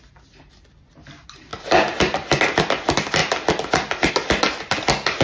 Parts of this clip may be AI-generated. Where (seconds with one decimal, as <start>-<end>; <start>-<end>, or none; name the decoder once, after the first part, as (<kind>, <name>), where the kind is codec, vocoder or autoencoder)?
none